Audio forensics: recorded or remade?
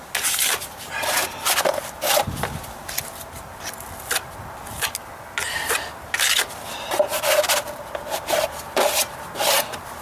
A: recorded